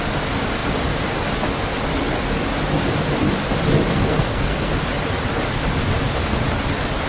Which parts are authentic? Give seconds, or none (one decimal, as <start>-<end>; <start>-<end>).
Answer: 0.0-3.9; 4.7-7.1